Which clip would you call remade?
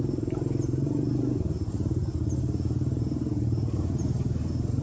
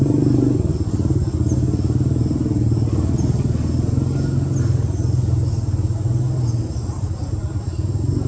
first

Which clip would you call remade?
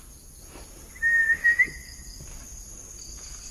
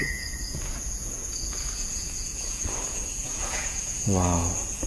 second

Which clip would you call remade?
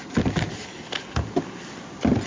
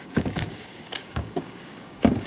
second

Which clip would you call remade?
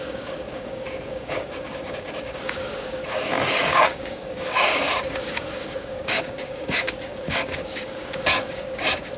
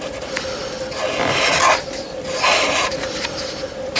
first